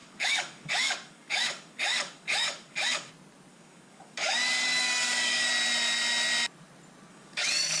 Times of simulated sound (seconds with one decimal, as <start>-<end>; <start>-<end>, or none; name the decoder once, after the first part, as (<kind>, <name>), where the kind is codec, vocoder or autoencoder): 0.0-3.1 (codec, DAC); 3.5-5.5; 7.1-7.8